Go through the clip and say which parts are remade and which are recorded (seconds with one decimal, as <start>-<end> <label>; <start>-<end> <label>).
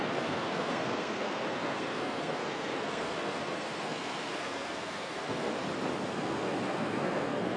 0.0-5.5 remade; 5.5-6.1 recorded; 6.1-7.6 remade